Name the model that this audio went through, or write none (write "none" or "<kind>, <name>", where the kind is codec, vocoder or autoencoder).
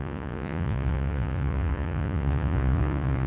vocoder, Vocos